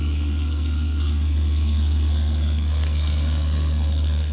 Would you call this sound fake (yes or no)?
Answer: yes